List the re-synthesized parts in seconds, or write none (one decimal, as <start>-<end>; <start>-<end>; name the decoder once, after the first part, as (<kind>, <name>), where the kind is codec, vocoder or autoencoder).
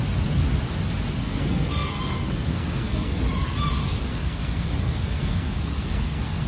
1.2-3.2 (codec, SNAC); 4.1-6.5